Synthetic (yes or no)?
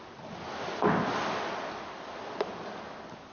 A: no